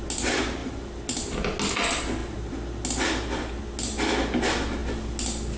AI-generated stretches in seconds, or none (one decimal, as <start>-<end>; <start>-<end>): none